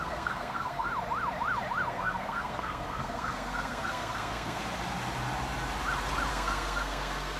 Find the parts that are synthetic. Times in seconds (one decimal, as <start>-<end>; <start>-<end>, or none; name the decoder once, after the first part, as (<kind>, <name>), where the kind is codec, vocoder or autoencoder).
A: 0.0-0.9 (codec, SNAC); 1.9-4.6; 6.3-7.4